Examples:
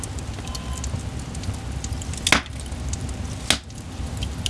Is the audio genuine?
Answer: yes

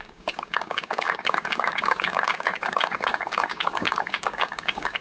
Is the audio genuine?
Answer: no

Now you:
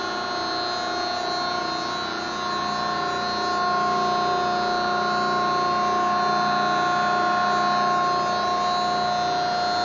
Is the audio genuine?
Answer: yes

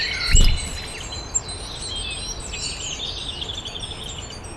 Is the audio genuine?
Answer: yes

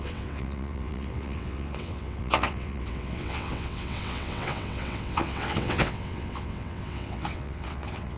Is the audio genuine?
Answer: no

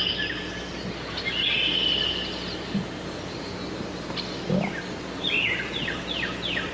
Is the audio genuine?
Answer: yes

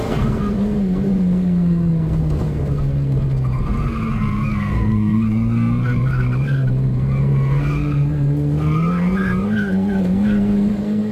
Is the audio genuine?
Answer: no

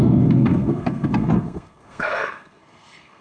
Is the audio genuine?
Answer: no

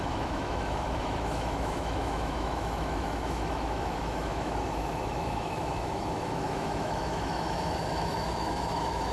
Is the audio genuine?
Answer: no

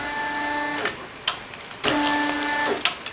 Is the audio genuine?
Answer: yes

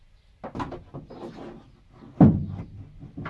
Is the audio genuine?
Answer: yes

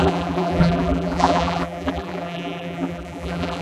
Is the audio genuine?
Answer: no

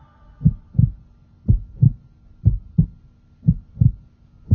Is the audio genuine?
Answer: yes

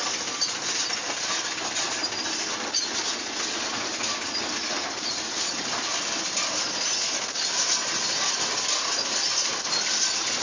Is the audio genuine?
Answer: yes